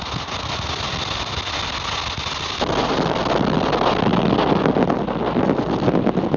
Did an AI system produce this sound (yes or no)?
no